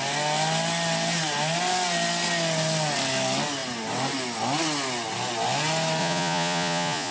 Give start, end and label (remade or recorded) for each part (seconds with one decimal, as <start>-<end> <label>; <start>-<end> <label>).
0.0-6.0 recorded; 6.0-7.1 remade

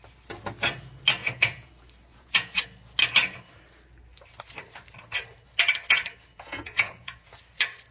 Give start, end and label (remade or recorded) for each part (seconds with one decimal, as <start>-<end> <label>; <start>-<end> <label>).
0.0-1.2 recorded; 1.2-1.7 remade; 1.7-2.1 recorded; 2.1-2.6 remade; 2.6-6.3 recorded; 6.3-7.3 remade; 7.3-7.9 recorded

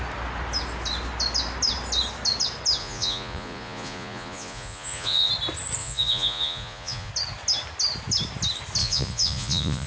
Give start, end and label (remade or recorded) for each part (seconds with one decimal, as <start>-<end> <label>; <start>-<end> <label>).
0.0-2.8 recorded; 2.8-5.3 remade; 5.3-5.8 recorded; 5.8-7.1 remade; 7.1-8.8 recorded; 8.8-9.9 remade

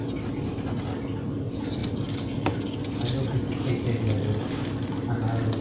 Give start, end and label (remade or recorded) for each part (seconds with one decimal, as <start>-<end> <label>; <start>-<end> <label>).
0.0-5.6 recorded

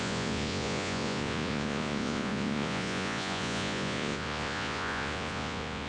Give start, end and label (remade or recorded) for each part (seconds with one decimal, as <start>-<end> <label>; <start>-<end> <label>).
0.0-5.9 remade

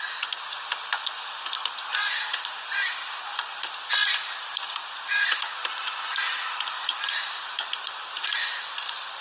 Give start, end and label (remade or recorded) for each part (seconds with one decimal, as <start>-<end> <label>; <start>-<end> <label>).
0.0-9.2 recorded